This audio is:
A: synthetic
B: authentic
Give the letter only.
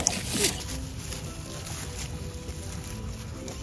B